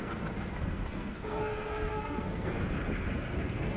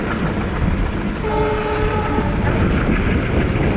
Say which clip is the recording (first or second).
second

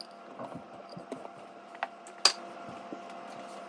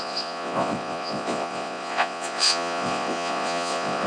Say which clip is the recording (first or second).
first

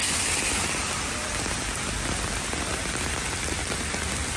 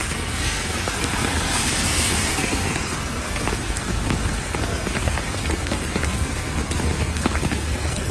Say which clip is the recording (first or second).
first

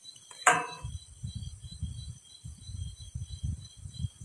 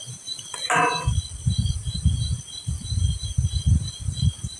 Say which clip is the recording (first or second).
second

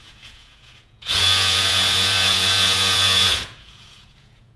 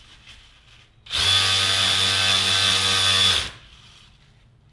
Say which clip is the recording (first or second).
second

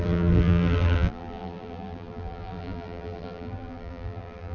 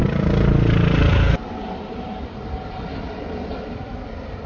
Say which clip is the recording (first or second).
second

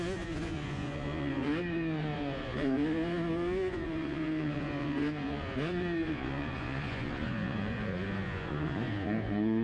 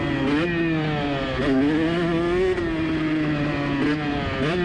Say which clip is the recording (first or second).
second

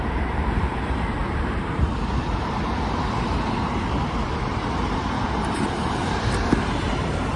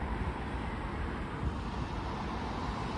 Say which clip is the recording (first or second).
second